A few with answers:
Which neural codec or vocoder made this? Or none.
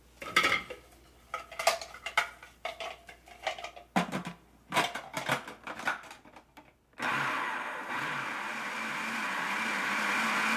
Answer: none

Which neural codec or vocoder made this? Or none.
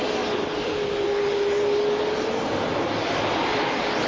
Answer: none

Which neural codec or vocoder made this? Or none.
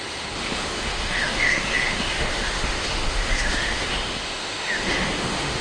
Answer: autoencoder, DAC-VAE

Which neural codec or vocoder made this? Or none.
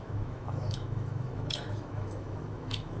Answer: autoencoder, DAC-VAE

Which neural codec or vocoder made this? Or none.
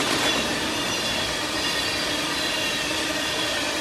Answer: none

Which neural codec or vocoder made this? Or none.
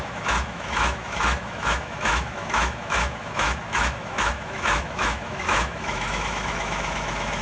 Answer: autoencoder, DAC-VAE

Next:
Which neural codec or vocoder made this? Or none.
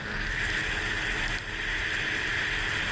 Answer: none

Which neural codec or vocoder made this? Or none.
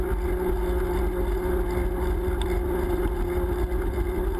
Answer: none